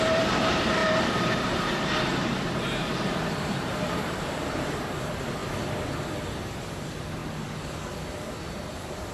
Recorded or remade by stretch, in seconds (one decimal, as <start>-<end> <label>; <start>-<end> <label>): 0.0-5.4 remade; 5.4-6.4 recorded; 6.4-7.2 remade; 7.2-8.5 recorded; 8.5-9.1 remade